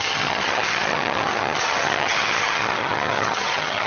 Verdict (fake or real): fake